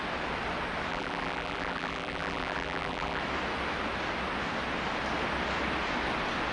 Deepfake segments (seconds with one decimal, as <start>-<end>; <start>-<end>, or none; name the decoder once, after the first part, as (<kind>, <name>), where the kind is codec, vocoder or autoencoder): 0.9-3.2 (vocoder, BigVGAN v2)